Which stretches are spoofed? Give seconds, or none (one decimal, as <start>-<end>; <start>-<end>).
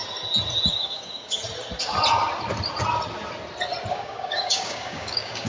0.7-1.4; 3.9-5.5